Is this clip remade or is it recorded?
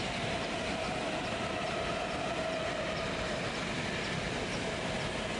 recorded